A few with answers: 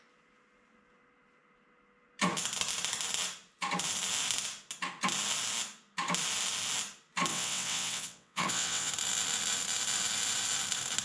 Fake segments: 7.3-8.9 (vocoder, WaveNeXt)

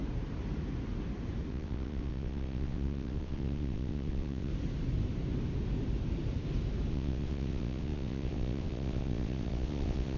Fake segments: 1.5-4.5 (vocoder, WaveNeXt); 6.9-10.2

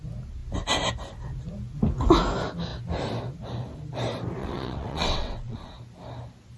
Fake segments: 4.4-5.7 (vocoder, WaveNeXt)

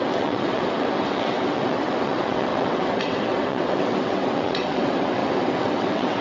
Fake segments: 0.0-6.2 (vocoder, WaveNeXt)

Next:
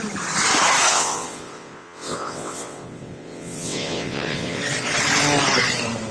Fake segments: 0.9-4.6 (vocoder, WaveNeXt)